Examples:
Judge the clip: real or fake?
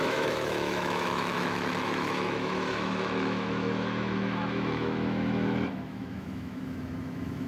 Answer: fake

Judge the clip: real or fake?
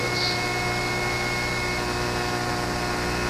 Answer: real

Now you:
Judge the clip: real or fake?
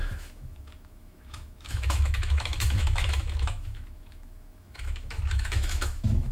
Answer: fake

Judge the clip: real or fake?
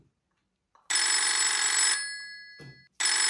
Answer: real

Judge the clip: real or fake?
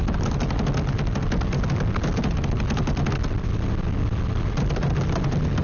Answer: real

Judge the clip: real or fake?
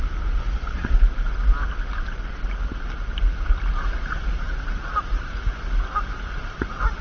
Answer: real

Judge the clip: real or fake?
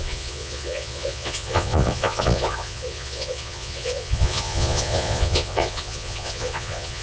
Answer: fake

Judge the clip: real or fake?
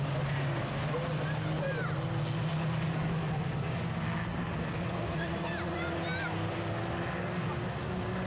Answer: real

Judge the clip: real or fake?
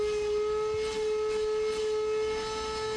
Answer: real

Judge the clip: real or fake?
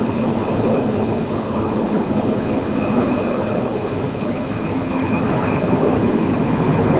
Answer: fake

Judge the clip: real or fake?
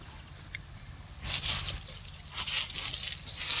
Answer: real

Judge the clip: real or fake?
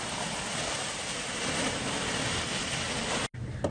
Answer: real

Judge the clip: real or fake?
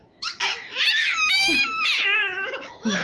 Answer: fake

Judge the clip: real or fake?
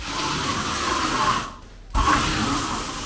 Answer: real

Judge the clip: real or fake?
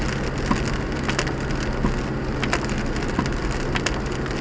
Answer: real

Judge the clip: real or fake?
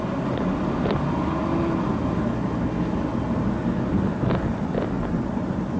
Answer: real